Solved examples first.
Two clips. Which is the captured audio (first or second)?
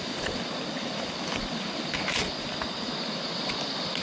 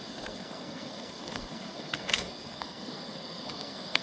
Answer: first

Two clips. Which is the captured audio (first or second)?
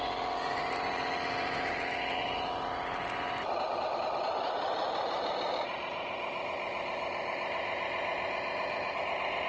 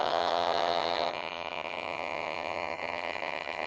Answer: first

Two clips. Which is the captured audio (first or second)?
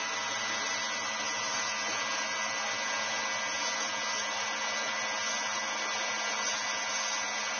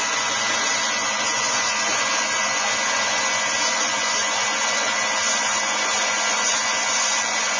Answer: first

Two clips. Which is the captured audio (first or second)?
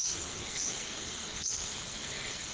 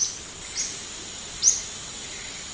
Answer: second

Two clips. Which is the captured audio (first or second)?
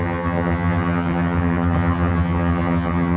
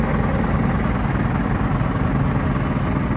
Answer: second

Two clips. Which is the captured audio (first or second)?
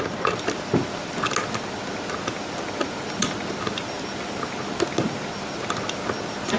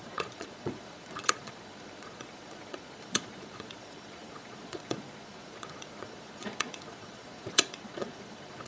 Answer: first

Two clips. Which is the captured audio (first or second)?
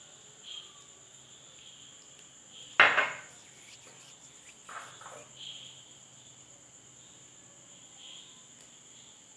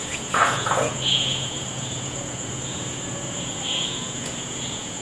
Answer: first